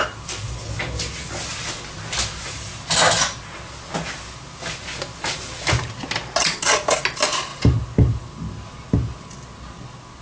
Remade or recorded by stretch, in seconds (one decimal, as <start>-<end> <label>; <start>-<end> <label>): 0.0-10.2 recorded